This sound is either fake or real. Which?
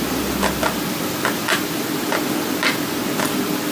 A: real